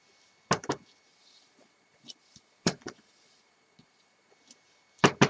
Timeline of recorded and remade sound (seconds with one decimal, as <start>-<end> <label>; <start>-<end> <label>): 0.0-1.1 recorded; 1.1-4.3 remade; 4.3-5.3 recorded